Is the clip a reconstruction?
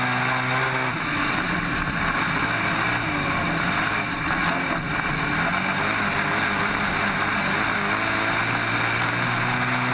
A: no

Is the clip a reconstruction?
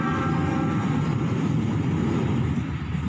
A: no